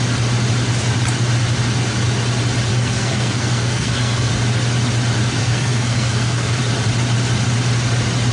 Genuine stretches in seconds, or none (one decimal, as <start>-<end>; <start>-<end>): 0.0-2.7; 4.3-5.4; 6.6-8.3